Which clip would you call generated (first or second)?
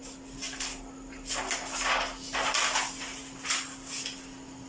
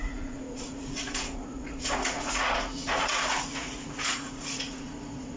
second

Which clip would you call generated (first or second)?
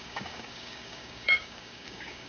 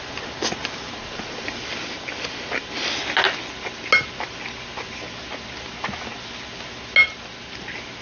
first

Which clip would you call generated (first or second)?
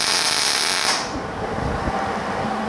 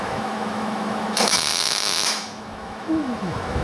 second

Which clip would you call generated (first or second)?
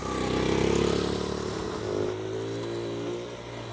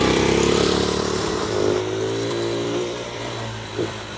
second